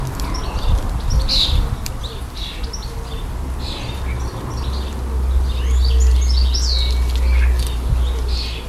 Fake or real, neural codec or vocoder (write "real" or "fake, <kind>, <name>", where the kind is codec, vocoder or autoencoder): real